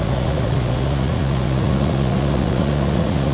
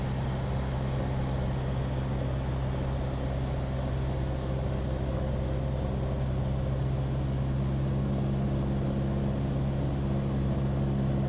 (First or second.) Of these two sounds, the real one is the second